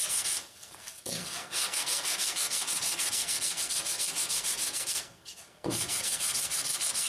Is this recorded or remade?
remade